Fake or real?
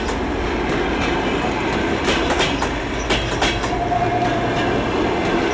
real